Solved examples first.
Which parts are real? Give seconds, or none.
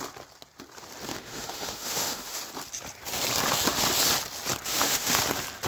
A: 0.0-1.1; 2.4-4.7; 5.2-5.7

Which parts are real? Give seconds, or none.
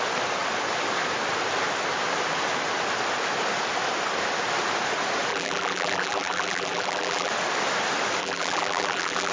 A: 0.0-5.3; 7.3-8.2